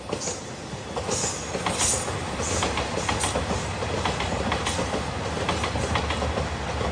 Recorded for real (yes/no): yes